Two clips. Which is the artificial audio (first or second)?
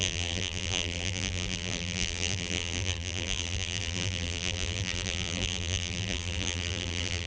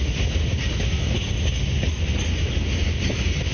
first